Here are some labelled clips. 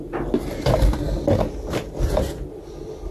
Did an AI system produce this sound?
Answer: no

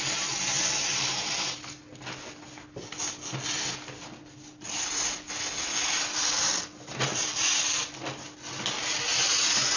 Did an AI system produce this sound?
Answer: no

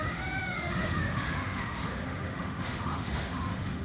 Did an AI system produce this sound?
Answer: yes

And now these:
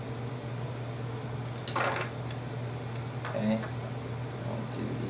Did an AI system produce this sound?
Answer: no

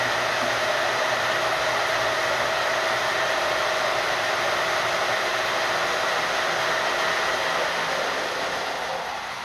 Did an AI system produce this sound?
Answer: no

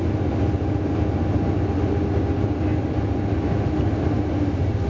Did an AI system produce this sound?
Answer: no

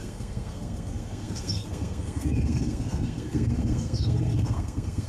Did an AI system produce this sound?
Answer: yes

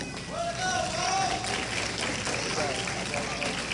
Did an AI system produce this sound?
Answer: no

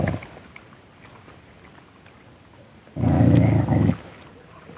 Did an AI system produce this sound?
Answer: no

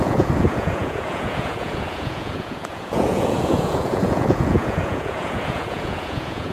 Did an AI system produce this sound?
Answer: yes